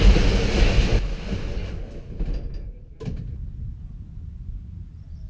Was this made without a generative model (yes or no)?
yes